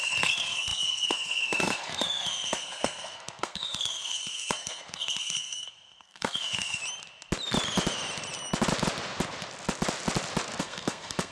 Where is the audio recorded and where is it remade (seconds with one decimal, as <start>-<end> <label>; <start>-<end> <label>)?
0.0-6.8 remade; 6.8-10.6 recorded; 10.6-11.3 remade